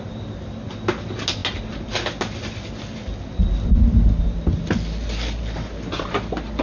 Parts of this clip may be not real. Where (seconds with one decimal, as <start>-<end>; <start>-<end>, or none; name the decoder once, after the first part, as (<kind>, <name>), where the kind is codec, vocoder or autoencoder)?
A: none